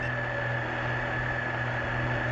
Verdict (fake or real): real